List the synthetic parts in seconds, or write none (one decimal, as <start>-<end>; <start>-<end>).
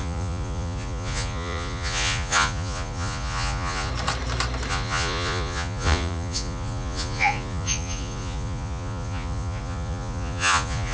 0.0-3.9; 4.7-10.9